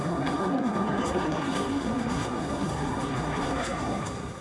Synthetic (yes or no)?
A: yes